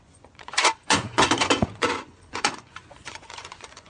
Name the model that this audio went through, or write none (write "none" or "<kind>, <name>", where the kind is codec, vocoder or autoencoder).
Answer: vocoder, Vocos